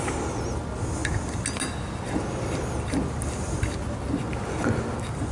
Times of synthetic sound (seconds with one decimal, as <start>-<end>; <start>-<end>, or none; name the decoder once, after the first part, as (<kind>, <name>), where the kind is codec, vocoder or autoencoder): none